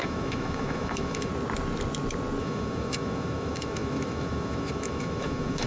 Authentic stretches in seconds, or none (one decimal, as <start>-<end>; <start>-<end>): 1.3-2.4